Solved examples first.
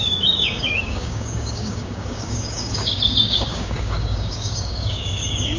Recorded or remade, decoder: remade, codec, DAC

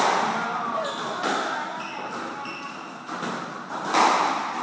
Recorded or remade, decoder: recorded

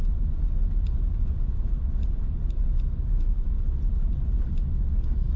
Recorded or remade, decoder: recorded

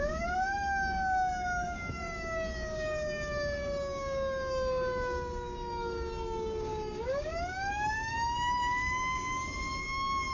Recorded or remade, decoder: remade, codec, DAC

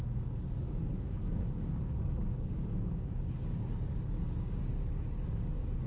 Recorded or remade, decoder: remade, codec, DAC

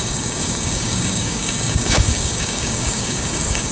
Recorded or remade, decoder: remade, codec, DAC